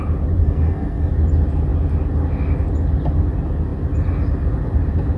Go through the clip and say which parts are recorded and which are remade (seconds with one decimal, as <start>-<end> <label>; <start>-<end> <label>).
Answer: 0.0-0.4 recorded; 0.4-1.1 remade; 1.1-5.2 recorded